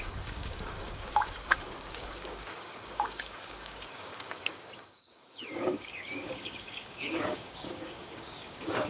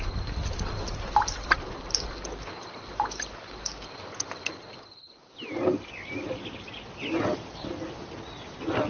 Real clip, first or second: second